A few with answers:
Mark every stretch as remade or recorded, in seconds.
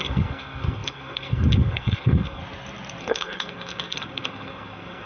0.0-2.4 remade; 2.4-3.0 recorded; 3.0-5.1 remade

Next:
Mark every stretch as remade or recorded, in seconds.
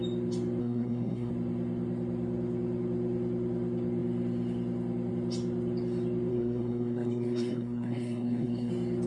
0.0-0.6 recorded; 0.6-1.3 remade; 1.3-6.3 recorded; 6.3-8.7 remade; 8.7-9.1 recorded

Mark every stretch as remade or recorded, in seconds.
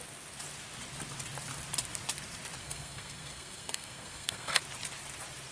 0.0-2.6 recorded; 2.6-4.6 remade; 4.6-5.5 recorded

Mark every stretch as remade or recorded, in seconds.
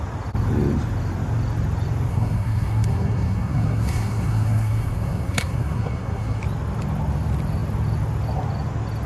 0.0-2.1 recorded; 2.1-6.4 remade; 6.4-9.1 recorded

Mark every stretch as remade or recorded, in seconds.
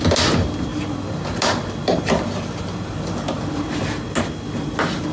0.0-5.1 recorded